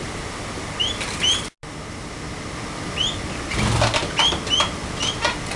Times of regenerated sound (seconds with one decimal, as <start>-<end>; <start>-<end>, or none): none